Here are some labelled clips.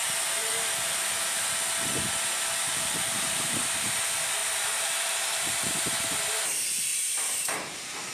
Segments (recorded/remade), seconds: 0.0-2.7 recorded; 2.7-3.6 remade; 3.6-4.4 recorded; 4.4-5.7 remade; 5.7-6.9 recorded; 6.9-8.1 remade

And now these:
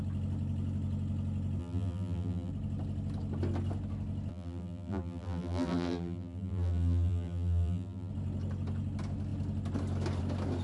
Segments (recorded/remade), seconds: 0.0-1.6 recorded; 1.6-2.5 remade; 2.5-4.3 recorded; 4.3-8.1 remade; 8.1-10.6 recorded

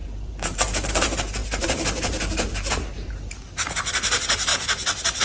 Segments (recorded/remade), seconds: 0.0-5.2 remade